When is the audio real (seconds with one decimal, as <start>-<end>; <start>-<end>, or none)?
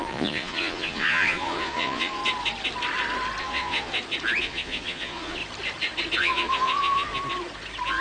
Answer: 2.2-3.4; 3.9-4.4; 5.4-6.2; 7.1-8.0